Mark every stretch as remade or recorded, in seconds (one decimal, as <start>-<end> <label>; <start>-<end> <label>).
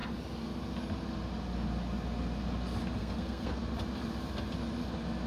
0.0-3.0 recorded; 3.0-3.6 remade; 3.6-5.3 recorded